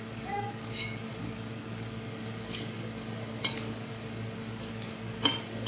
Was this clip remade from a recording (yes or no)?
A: yes